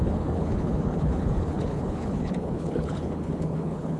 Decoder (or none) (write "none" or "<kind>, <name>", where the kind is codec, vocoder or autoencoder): codec, HILCodec